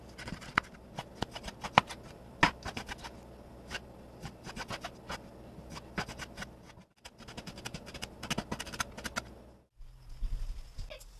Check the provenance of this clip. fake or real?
real